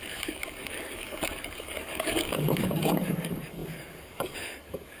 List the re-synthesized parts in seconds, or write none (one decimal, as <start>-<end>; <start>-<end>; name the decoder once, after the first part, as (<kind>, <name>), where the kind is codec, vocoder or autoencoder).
0.0-5.0 (codec, DAC)